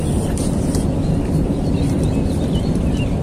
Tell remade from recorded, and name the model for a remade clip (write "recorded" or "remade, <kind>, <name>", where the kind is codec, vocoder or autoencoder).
recorded